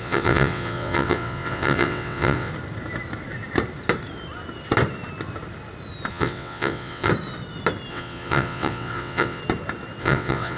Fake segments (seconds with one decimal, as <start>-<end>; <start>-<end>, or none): 0.0-2.5; 6.1-7.1; 7.9-9.4; 10.0-10.6